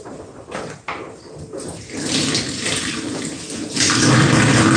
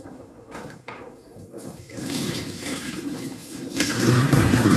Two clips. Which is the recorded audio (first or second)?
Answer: first